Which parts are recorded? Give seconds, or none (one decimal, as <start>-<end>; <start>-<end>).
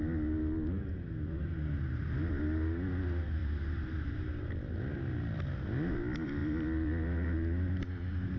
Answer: 0.0-8.4